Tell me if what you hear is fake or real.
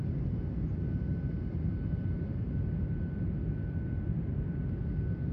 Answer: real